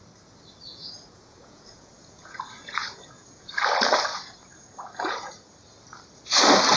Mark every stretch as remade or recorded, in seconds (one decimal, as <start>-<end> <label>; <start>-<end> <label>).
0.0-0.7 recorded; 0.7-3.6 remade; 3.6-4.1 recorded; 4.1-5.5 remade; 5.5-6.8 recorded